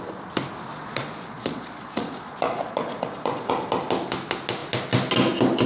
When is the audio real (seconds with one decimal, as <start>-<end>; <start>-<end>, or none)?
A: 0.0-0.7; 3.5-5.7